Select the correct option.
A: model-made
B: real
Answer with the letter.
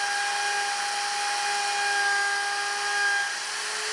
B